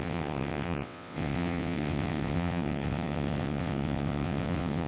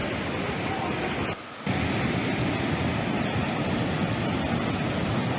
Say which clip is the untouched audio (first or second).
second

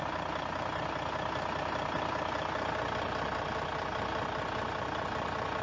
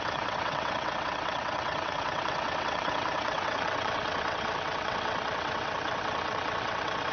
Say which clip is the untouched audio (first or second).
first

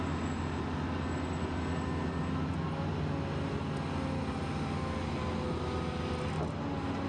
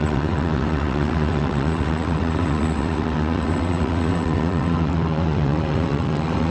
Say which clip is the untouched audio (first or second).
first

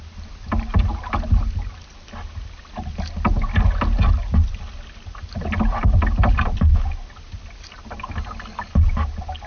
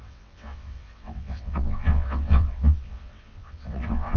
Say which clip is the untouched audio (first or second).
first